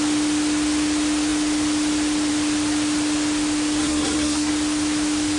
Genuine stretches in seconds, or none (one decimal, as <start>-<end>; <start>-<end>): 0.0-3.8; 4.5-5.4